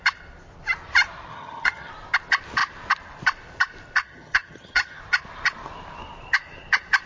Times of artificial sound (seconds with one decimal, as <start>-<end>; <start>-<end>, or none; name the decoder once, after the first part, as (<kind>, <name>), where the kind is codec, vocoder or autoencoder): 1.3-1.9 (vocoder, HiFi-GAN); 4.0-5.0